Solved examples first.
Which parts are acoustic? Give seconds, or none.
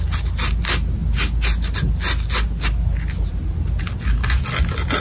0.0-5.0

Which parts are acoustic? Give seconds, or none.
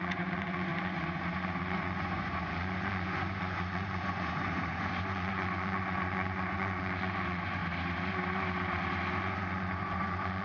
7.6-9.2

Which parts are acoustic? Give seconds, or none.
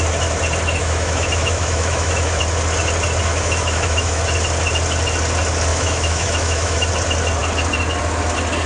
0.0-0.8; 2.4-3.3; 4.2-5.7; 6.9-8.7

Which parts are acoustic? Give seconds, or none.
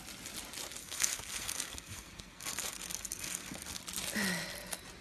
0.0-0.8; 3.8-5.0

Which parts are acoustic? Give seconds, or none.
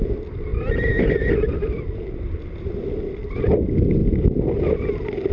0.0-5.3